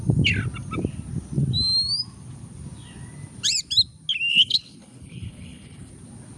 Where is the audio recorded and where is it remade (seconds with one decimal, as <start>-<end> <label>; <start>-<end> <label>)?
0.0-4.3 recorded; 4.3-5.9 remade; 5.9-6.4 recorded